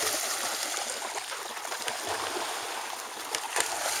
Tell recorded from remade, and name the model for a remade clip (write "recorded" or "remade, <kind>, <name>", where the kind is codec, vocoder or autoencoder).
recorded